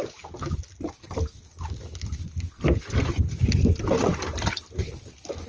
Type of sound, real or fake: real